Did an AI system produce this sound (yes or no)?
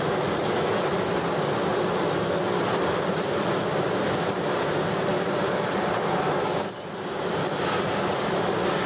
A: no